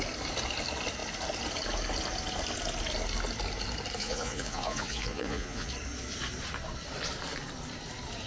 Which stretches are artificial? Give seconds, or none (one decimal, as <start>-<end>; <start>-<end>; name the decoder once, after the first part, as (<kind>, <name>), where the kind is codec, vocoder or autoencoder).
4.0-5.7 (vocoder, Vocos)